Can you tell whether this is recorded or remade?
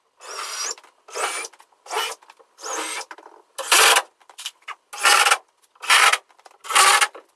recorded